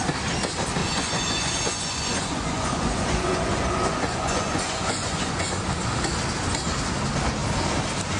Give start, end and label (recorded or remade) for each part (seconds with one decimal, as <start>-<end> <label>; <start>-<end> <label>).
0.0-0.8 recorded; 0.8-5.5 remade; 5.5-8.2 recorded